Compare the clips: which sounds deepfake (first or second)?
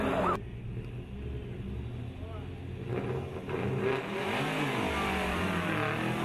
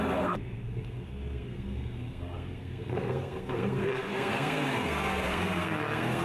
second